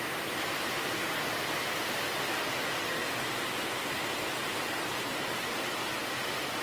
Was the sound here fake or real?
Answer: real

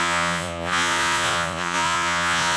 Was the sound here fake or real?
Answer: fake